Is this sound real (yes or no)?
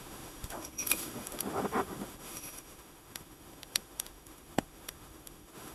no